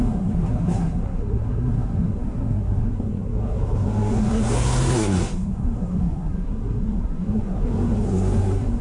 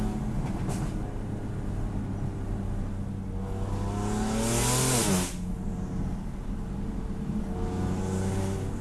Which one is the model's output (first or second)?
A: first